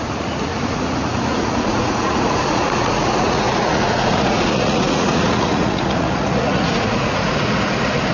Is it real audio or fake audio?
fake